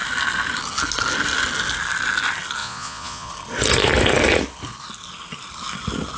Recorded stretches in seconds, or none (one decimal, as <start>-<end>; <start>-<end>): 0.0-2.6; 3.3-6.2